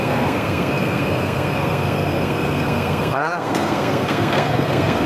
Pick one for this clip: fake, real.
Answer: fake